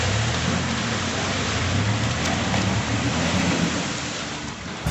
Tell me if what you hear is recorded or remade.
recorded